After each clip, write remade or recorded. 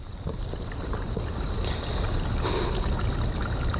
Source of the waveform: recorded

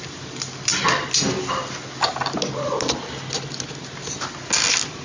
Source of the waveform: recorded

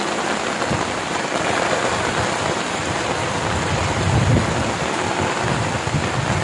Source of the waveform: recorded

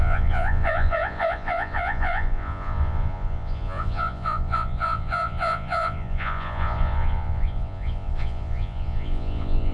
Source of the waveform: remade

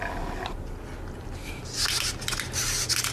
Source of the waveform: recorded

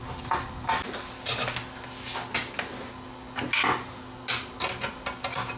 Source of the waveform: recorded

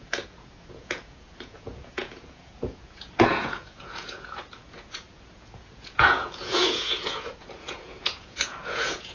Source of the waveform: remade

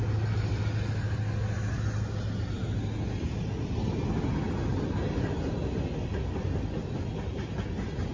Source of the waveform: recorded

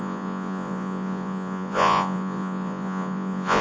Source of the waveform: remade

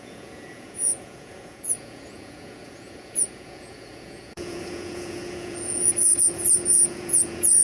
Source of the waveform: remade